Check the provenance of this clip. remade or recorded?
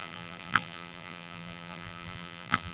remade